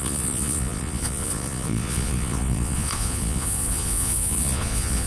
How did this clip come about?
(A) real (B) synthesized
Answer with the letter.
B